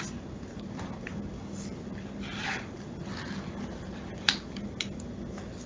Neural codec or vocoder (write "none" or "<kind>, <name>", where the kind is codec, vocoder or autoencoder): none